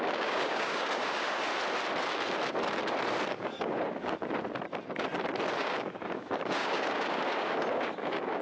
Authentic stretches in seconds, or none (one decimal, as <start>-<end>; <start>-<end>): 1.5-3.3; 4.0-5.6